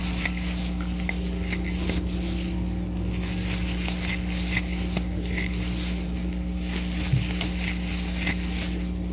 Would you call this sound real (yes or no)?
yes